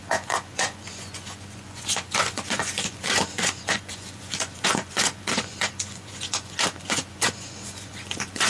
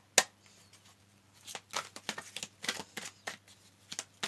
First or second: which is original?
second